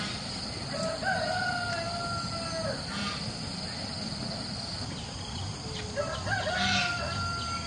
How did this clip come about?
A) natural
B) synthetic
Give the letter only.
A